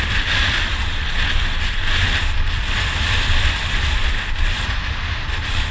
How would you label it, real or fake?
real